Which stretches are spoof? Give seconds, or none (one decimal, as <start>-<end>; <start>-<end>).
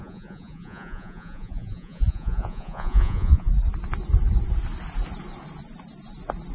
0.0-3.5